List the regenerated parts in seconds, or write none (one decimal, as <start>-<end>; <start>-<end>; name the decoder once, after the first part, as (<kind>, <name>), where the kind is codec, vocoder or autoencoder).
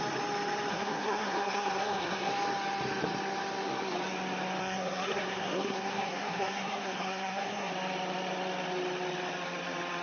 0.7-2.3 (codec, SNAC); 4.6-7.7